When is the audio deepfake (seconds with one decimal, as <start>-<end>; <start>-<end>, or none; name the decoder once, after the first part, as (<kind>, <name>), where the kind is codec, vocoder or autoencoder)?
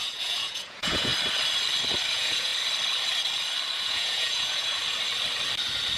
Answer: 0.0-1.1 (vocoder, Vocos); 2.1-2.5; 3.8-4.8